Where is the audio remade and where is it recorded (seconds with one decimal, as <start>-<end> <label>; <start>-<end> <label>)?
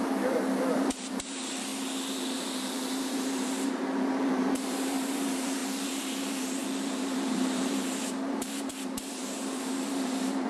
0.0-1.7 remade; 1.7-2.2 recorded; 2.2-10.5 remade